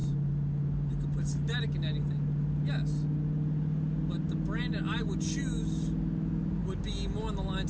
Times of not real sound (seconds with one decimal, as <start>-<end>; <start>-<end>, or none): none